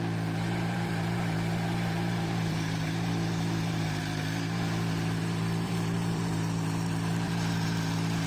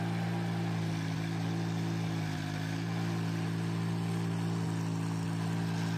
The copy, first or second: first